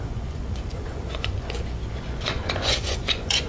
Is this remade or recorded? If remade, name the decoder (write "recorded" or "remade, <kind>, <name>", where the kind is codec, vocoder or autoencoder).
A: remade, vocoder, Vocos